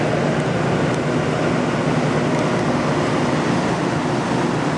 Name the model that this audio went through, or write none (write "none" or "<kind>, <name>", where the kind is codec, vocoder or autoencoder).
none